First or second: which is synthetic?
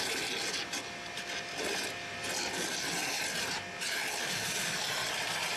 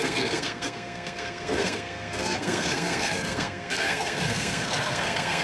second